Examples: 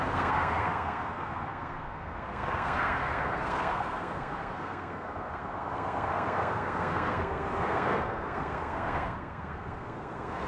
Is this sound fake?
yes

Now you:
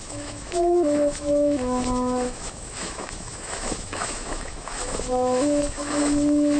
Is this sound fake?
yes